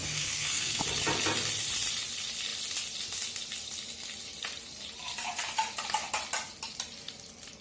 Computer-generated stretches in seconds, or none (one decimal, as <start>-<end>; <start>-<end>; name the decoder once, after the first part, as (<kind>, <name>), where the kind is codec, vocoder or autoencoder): 0.0-0.8 (codec, SNAC)